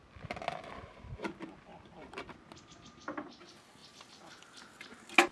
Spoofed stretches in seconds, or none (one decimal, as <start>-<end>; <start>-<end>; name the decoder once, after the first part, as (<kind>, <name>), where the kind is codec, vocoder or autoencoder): none